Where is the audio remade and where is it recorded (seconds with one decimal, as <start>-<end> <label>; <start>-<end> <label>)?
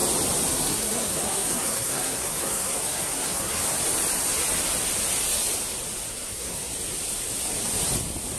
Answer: 0.0-0.5 recorded; 0.5-3.6 remade; 3.6-6.1 recorded; 6.1-6.7 remade; 6.7-8.4 recorded